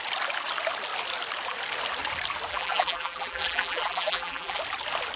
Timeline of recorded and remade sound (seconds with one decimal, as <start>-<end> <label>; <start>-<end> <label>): 0.0-2.5 recorded; 2.5-4.6 remade; 4.6-5.2 recorded